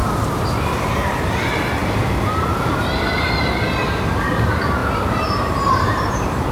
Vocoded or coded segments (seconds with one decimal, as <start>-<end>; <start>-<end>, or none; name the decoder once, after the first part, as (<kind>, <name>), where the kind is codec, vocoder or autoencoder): 0.0-0.9 (vocoder, BigVGAN v2); 4.8-6.5